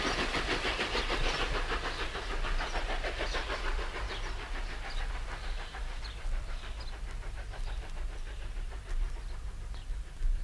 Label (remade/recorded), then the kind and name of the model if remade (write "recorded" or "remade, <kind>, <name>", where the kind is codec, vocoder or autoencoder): recorded